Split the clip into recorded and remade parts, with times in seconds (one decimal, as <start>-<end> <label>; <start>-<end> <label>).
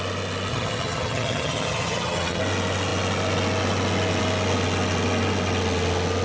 0.0-0.5 recorded; 0.5-2.4 remade; 2.4-6.2 recorded